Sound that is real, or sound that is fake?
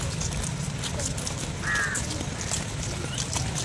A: real